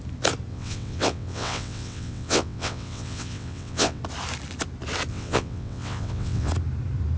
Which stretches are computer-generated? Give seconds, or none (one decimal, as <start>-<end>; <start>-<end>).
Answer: 0.5-4.0; 5.1-6.5